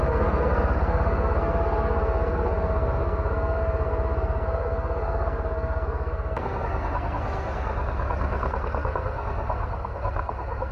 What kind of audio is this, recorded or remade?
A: remade